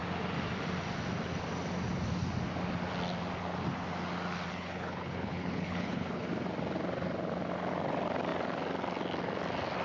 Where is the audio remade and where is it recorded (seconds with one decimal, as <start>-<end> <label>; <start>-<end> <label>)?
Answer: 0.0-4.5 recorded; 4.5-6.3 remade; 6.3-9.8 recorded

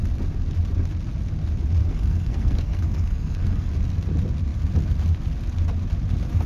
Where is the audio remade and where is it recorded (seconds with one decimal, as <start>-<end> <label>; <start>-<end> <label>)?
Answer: 0.0-1.8 recorded; 1.8-3.7 remade; 3.7-6.5 recorded

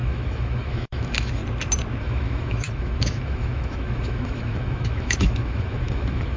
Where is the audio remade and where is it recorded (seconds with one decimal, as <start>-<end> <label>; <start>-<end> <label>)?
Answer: 0.0-1.4 remade; 1.4-2.0 recorded; 2.0-6.4 remade